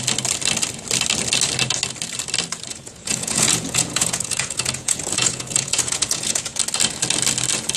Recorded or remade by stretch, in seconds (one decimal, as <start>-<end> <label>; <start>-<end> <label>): 0.0-2.7 recorded; 2.7-6.6 remade; 6.6-7.8 recorded